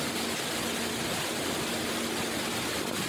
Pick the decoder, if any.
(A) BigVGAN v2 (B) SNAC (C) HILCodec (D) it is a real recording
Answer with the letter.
D